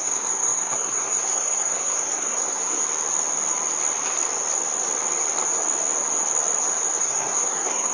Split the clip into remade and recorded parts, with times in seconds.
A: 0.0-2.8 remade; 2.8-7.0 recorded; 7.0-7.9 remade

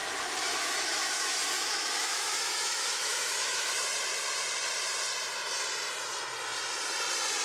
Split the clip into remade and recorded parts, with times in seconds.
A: 0.0-3.7 remade; 3.7-7.4 recorded

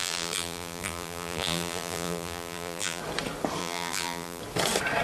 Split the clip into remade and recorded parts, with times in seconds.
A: 0.0-3.0 remade; 3.0-3.6 recorded; 3.6-4.4 remade; 4.4-5.0 recorded

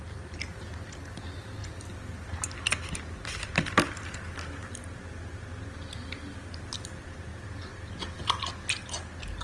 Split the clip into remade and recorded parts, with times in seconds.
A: 0.0-9.4 recorded

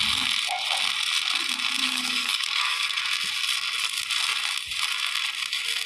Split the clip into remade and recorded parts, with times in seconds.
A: 0.0-1.8 recorded; 1.8-3.0 remade; 3.0-5.9 recorded

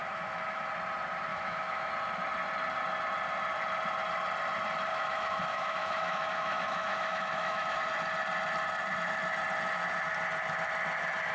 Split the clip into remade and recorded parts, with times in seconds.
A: 0.0-0.7 remade; 0.7-1.3 recorded; 1.3-1.9 remade; 1.9-4.9 recorded; 4.9-7.8 remade; 7.8-11.3 recorded

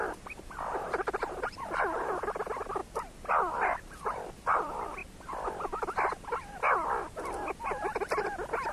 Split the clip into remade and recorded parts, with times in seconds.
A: 0.0-2.8 remade; 2.8-3.5 recorded; 3.5-5.0 remade; 5.0-8.7 recorded

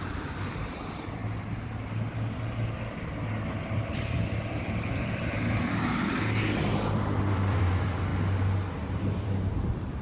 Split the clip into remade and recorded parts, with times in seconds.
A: 0.0-1.2 remade; 1.2-3.6 recorded; 3.6-5.8 remade; 5.8-6.7 recorded; 6.7-8.1 remade; 8.1-8.7 recorded; 8.7-10.0 remade